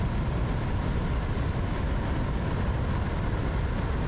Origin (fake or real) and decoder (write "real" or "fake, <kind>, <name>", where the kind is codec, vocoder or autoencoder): real